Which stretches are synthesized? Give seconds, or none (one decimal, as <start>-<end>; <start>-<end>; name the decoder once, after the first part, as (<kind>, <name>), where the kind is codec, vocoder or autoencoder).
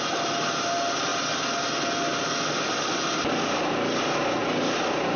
none